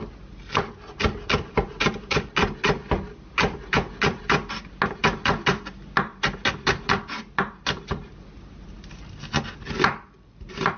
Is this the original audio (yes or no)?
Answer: yes